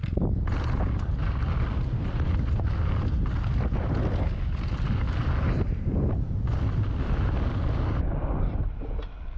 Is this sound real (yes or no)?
yes